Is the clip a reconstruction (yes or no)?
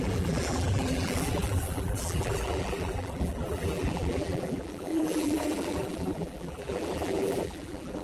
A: yes